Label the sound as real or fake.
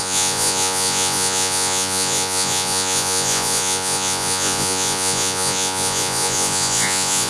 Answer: fake